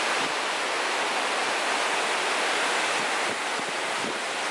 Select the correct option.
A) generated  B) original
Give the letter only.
B